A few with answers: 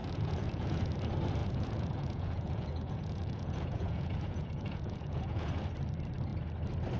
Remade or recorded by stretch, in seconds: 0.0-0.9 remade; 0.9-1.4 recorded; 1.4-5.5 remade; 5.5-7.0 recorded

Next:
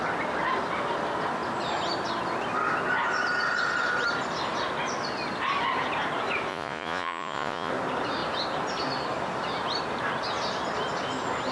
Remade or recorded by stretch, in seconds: 0.0-6.5 recorded; 6.5-7.7 remade; 7.7-11.5 recorded

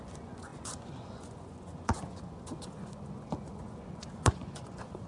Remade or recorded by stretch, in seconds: 0.0-5.1 remade

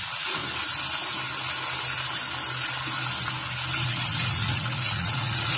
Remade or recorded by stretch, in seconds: 0.0-0.4 remade; 0.4-3.8 recorded; 3.8-5.6 remade

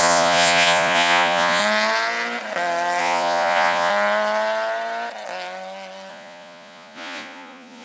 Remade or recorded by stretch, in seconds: 0.0-1.6 remade; 1.6-3.0 recorded; 3.0-3.9 remade; 3.9-6.1 recorded; 6.1-7.8 remade

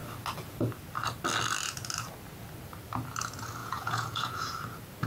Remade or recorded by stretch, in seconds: 0.0-3.6 recorded; 3.6-4.5 remade; 4.5-5.1 recorded

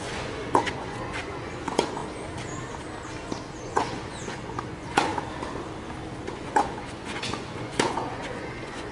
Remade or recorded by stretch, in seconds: 0.0-2.0 remade; 2.0-3.6 recorded; 3.6-5.1 remade; 5.1-6.3 recorded; 6.3-8.9 remade